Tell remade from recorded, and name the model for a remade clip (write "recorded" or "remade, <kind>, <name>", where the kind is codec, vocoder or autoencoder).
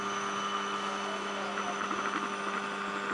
recorded